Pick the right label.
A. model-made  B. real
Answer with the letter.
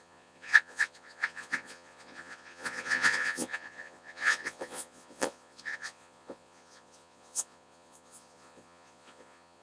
A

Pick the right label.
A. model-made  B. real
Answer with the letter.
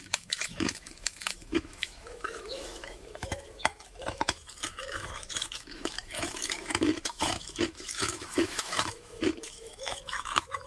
A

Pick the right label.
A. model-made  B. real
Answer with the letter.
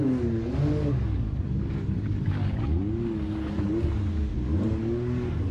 A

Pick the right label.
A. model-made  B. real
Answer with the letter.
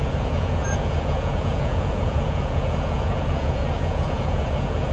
A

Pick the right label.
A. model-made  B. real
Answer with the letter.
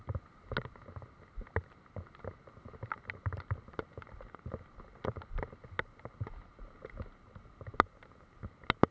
B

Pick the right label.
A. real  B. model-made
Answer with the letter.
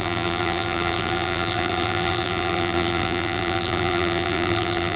B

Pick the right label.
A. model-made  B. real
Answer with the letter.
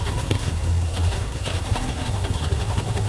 A